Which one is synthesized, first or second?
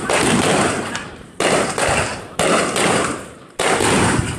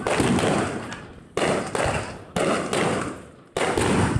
first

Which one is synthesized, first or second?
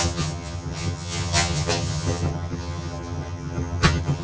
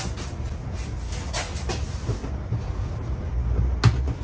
first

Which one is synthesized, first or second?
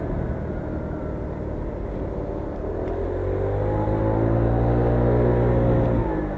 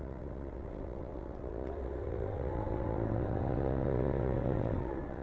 second